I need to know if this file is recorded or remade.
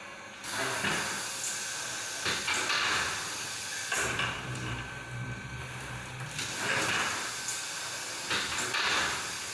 recorded